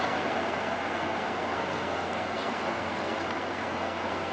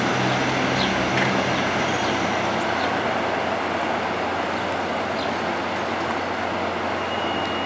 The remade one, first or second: first